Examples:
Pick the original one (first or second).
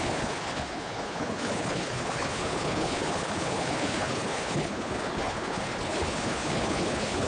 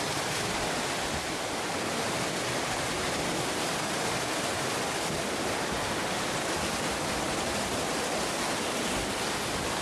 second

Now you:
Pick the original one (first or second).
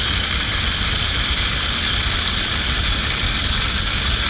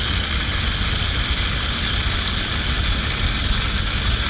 second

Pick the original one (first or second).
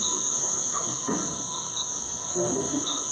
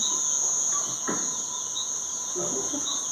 second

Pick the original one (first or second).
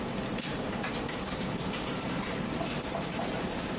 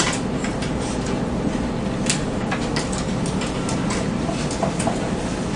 second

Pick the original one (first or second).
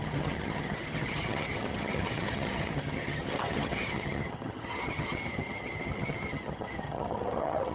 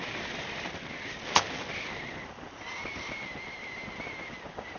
second